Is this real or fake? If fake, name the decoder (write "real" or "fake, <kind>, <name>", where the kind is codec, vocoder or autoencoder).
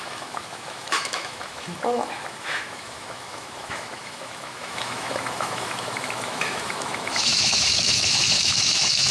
fake, autoencoder, DAC-VAE